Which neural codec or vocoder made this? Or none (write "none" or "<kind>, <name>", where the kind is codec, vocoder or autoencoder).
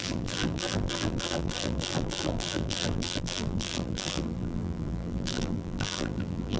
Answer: vocoder, BigVGAN v2